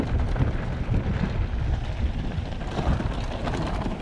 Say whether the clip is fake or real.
real